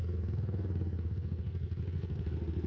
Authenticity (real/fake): fake